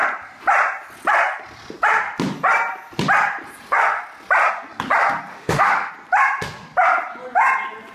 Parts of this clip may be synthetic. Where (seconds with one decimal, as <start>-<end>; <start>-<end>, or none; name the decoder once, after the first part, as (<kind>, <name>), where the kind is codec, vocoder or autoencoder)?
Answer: 5.3-5.9 (autoencoder, DAC-VAE)